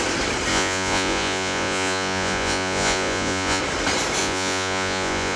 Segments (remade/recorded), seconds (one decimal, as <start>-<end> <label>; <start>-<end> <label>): 0.0-0.5 recorded; 0.5-3.6 remade; 3.6-4.2 recorded; 4.2-5.4 remade